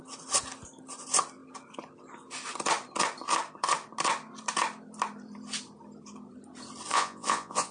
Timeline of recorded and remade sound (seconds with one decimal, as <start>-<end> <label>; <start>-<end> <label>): 0.0-6.9 recorded; 6.9-7.7 remade